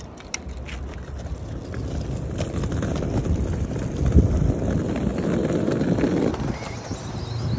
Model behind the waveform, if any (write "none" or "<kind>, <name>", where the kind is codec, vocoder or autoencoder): none